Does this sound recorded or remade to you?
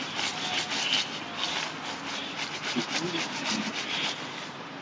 recorded